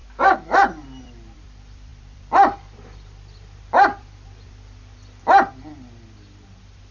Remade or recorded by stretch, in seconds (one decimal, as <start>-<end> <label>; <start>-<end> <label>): 0.0-1.0 recorded; 1.0-6.9 remade